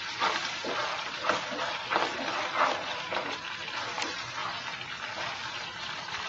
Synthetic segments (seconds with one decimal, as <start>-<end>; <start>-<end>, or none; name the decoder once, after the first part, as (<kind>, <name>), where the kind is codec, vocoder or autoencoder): 0.0-4.4 (vocoder, BigVGAN v2); 5.5-6.3